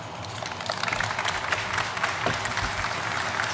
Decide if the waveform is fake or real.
real